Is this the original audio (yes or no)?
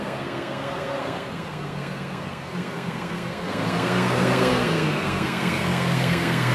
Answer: no